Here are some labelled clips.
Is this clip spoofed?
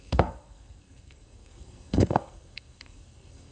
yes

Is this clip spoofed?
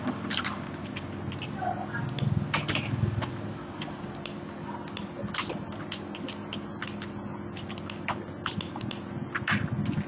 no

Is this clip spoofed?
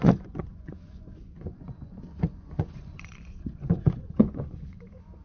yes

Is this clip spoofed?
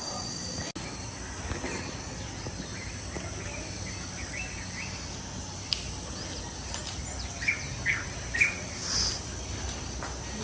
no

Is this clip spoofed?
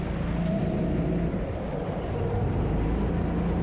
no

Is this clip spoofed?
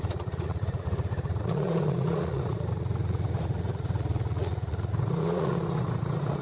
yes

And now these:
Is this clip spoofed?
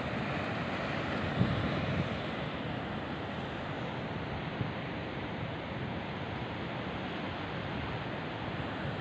no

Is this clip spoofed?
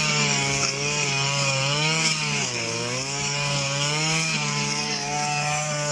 yes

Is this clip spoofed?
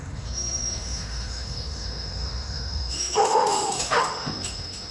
yes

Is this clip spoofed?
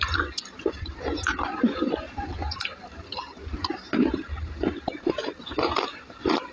yes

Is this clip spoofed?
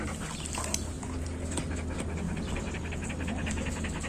no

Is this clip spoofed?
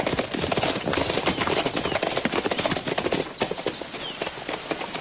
no